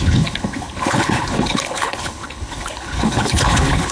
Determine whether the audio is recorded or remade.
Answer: remade